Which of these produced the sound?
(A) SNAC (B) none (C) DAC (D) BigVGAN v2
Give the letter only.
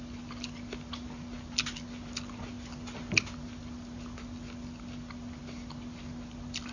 B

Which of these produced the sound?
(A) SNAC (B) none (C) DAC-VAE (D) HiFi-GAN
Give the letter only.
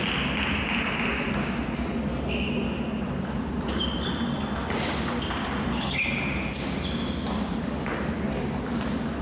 B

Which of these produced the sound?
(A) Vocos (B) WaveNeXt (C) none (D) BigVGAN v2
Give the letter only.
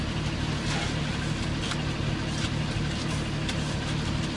C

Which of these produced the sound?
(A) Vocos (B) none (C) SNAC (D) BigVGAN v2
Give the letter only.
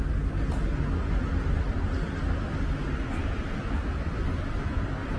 B